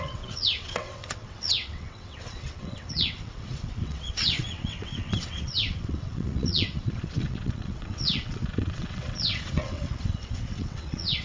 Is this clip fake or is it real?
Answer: fake